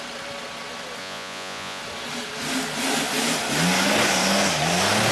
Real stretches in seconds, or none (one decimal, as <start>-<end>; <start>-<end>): 0.0-1.0; 1.8-5.1